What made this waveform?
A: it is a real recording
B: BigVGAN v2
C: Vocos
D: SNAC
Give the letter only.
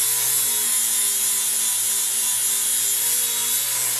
A